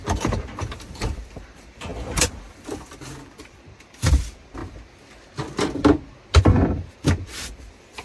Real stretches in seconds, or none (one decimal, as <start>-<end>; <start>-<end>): 4.6-7.5